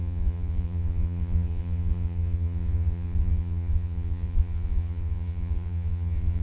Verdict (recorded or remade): remade